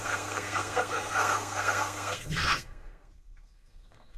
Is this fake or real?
fake